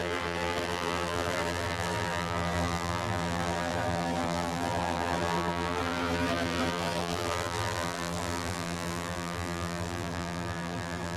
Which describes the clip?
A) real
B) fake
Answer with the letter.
B